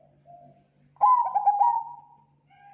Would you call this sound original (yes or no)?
yes